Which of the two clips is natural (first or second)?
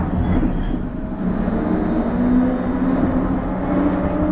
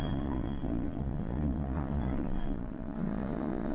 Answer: first